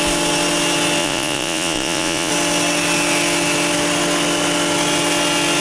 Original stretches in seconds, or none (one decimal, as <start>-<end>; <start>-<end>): 0.0-1.0; 2.3-5.6